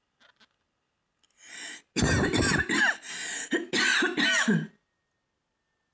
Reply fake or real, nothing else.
real